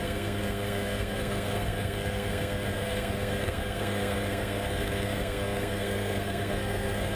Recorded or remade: remade